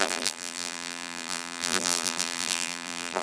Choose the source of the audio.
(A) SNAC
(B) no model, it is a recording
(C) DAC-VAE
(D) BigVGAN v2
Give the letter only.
D